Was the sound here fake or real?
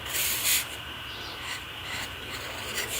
fake